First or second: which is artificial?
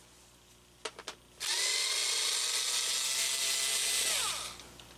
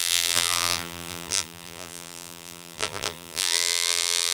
second